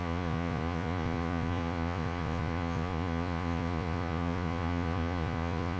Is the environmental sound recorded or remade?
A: remade